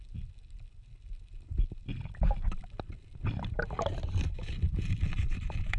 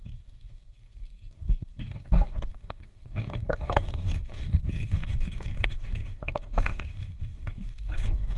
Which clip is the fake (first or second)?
second